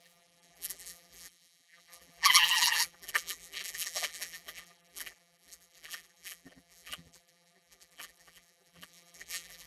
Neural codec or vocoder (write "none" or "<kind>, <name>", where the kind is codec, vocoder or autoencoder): vocoder, BigVGAN v2